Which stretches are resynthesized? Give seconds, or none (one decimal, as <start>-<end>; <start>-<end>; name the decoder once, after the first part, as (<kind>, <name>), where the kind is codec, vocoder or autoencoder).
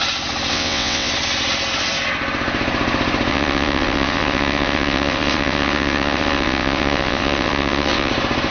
0.5-1.1 (vocoder, WaveNeXt); 3.3-8.1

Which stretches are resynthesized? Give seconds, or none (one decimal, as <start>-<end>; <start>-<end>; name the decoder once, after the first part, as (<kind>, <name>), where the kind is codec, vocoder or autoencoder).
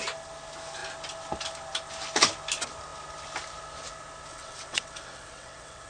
4.3-5.9 (vocoder, WaveNeXt)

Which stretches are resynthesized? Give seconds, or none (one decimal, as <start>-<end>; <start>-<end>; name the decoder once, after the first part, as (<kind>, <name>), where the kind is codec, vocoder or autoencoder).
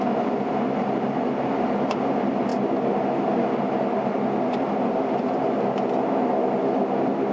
none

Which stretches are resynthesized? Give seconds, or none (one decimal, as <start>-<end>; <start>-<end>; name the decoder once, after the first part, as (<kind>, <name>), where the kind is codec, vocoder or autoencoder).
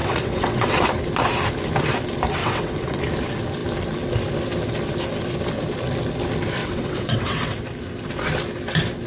0.0-0.7 (vocoder, WaveNeXt); 2.4-3.0; 6.6-7.6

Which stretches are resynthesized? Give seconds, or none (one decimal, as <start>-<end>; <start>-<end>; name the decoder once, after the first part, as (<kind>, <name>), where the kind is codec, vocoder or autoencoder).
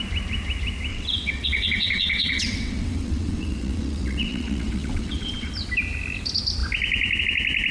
0.9-5.5 (vocoder, WaveNeXt)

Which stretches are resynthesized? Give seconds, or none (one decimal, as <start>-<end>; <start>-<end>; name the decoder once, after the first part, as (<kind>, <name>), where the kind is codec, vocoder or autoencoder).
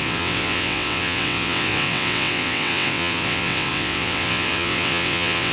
0.0-5.5 (vocoder, WaveNeXt)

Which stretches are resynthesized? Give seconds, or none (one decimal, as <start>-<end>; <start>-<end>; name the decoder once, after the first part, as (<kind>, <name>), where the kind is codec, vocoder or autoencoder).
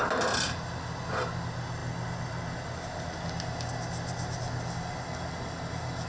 none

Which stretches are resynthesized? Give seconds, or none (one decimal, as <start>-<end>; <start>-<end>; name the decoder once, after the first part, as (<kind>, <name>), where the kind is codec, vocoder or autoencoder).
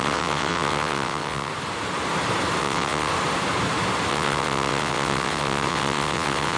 0.0-1.5 (vocoder, WaveNeXt); 2.6-3.1; 4.1-6.6